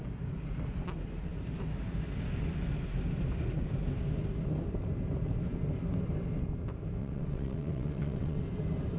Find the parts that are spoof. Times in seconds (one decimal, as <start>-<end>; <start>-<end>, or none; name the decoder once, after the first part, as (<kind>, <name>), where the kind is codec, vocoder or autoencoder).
7.0-8.4 (vocoder, WaveNeXt)